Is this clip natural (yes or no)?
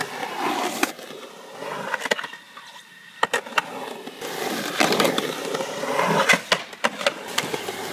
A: yes